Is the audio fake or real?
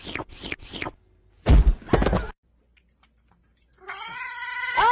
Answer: real